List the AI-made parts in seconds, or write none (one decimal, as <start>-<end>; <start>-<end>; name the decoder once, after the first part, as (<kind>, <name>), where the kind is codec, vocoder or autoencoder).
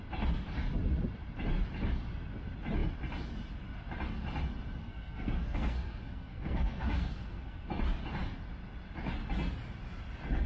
4.8-7.7 (codec, SNAC)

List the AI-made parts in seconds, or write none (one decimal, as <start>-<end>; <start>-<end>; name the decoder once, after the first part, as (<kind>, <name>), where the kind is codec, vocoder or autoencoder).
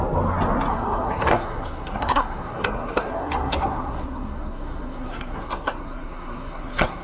0.7-7.0 (codec, SNAC)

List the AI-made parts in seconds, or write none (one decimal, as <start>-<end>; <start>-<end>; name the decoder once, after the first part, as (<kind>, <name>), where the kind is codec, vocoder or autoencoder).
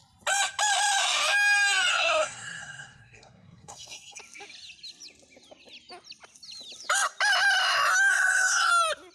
1.9-4.2 (codec, SNAC); 8.1-8.7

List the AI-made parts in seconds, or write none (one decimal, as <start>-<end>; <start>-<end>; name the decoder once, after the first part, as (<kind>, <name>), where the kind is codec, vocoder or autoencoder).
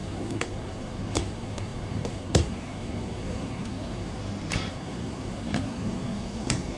0.0-4.2 (codec, SNAC); 4.7-6.8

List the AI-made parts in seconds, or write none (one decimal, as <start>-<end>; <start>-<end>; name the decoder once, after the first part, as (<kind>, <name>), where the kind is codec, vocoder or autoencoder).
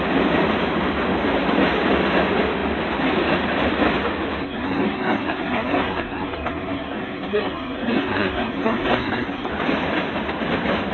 4.4-9.5 (codec, SNAC)